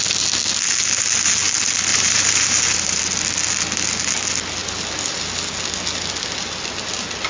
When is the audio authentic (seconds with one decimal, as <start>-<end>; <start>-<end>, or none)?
0.0-1.9; 3.0-7.3